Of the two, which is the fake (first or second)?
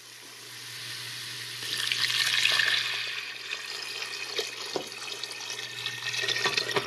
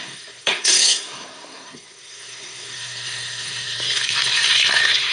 second